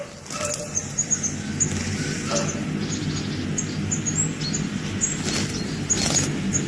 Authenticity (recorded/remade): recorded